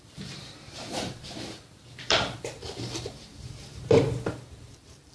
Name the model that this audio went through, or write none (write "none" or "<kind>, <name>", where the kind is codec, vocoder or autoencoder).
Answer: vocoder, BigVGAN v2